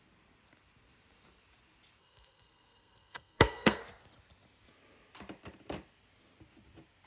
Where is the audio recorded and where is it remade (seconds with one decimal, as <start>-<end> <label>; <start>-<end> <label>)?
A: 0.0-2.0 recorded; 2.0-3.8 remade; 3.8-7.1 recorded